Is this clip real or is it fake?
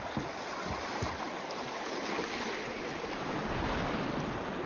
real